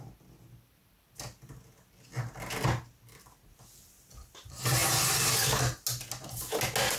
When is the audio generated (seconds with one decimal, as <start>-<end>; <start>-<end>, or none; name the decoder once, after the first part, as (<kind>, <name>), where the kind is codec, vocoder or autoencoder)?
none